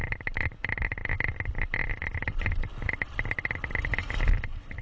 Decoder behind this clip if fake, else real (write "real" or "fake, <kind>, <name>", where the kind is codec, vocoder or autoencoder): real